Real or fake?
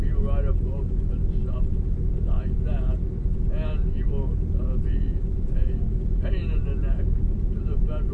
real